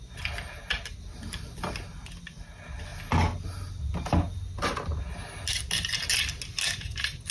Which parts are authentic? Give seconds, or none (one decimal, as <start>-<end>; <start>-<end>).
0.0-7.3